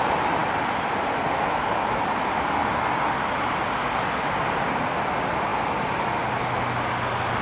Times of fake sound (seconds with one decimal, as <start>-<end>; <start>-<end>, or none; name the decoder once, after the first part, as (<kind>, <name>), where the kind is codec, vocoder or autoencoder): none